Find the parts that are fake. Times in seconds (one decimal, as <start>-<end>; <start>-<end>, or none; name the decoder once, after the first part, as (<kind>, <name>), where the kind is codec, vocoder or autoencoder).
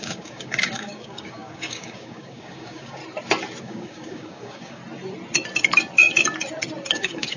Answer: 0.0-3.0 (codec, DAC); 3.6-4.8; 6.9-7.4